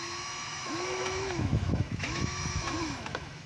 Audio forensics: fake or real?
fake